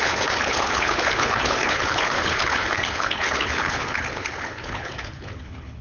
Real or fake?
fake